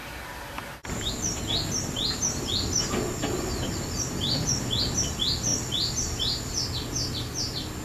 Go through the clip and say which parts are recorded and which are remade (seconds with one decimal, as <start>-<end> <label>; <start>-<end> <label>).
0.0-1.1 remade; 1.1-7.8 recorded